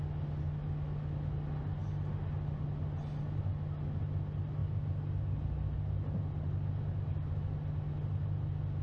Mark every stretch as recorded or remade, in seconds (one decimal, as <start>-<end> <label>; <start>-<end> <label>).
0.0-8.8 recorded